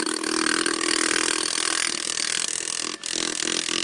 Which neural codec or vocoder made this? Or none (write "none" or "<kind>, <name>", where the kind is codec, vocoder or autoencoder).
none